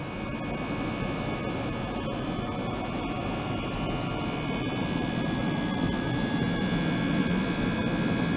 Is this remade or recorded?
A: remade